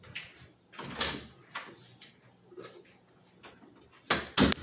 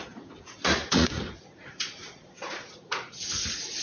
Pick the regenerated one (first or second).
second